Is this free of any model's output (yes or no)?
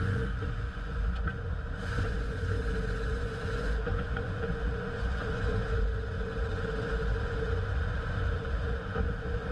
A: no